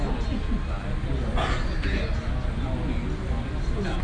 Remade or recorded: recorded